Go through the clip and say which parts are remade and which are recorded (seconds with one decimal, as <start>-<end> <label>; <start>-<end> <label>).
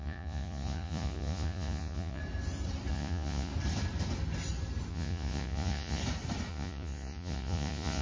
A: 0.0-2.2 remade; 2.2-2.9 recorded; 2.9-3.5 remade; 3.5-4.9 recorded; 4.9-6.0 remade; 6.0-6.5 recorded; 6.5-8.0 remade